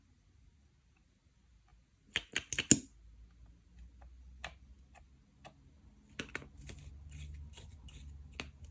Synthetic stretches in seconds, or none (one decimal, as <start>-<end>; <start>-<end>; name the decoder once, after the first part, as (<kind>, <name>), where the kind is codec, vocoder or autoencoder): none